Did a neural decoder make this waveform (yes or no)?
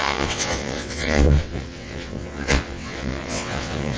yes